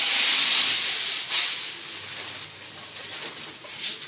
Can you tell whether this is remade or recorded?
recorded